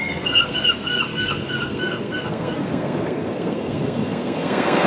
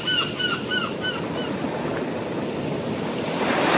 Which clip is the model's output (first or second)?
first